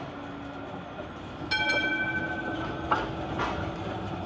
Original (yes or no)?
yes